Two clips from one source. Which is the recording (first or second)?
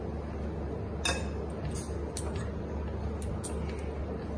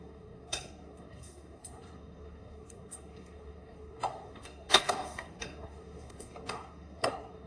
first